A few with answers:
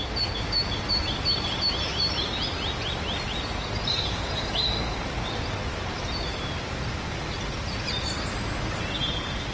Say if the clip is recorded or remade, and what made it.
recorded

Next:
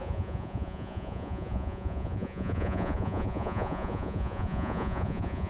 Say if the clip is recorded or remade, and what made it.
remade, vocoder, Vocos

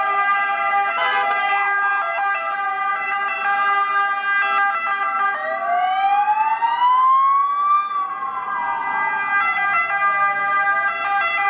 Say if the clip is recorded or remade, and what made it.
recorded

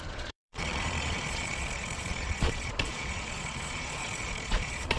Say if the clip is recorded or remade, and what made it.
remade, vocoder, Vocos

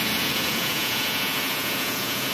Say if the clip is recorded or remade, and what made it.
remade, vocoder, Vocos